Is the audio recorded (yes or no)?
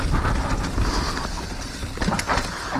yes